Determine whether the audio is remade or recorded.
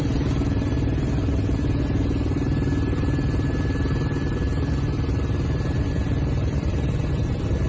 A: remade